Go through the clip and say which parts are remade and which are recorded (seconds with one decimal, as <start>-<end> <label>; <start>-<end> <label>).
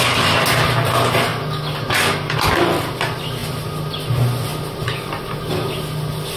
0.0-6.4 recorded